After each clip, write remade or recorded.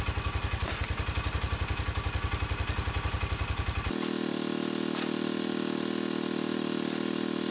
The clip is recorded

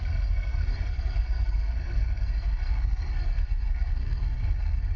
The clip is remade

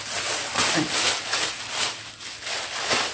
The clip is recorded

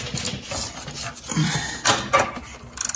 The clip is recorded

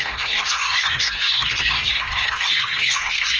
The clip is remade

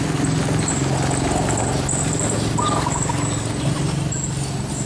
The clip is recorded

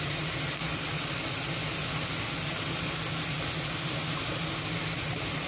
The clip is recorded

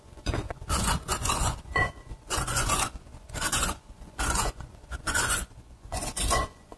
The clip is remade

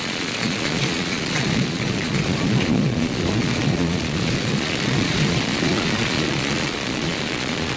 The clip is remade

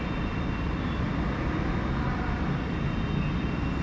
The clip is recorded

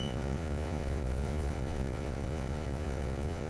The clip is remade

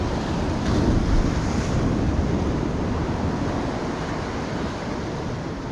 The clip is recorded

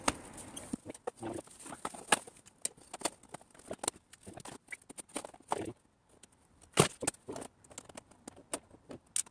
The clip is recorded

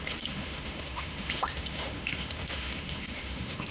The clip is remade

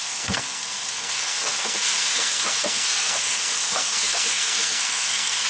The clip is remade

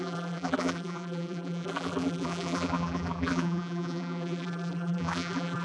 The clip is remade